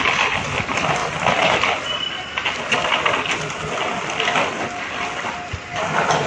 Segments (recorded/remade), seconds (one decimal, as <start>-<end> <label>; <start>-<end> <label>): 0.0-6.3 recorded